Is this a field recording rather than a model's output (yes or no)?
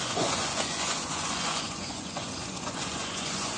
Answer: no